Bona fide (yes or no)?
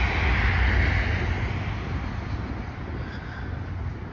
yes